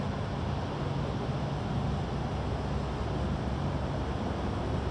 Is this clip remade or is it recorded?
recorded